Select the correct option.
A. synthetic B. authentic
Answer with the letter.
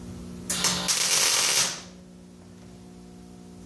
B